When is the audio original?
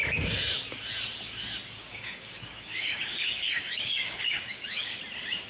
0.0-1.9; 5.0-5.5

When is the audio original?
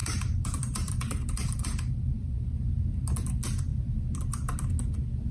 2.4-5.3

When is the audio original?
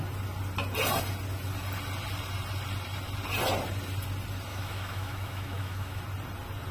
0.0-4.5; 6.0-6.7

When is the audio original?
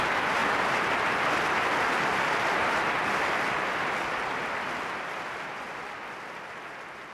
0.0-7.1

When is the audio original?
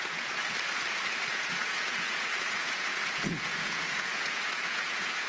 0.4-1.3